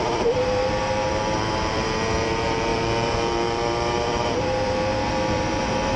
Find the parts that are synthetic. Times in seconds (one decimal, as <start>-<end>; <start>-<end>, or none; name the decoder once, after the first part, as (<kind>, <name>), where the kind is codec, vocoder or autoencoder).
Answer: 0.0-6.0 (vocoder, BigVGAN v2)